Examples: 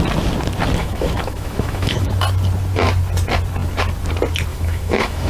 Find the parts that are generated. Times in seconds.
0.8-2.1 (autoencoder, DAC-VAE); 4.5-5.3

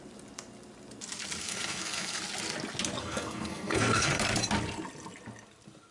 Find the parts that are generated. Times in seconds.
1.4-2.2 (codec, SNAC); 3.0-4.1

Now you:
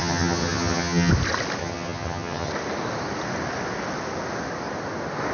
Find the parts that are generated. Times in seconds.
0.0-1.1 (vocoder, HiFi-GAN); 1.6-2.5

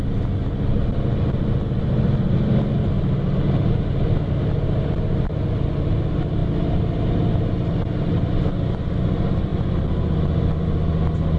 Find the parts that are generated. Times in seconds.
none